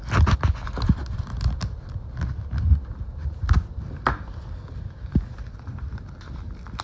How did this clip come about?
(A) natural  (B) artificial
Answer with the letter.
A